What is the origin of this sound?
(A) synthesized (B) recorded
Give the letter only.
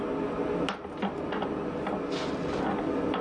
B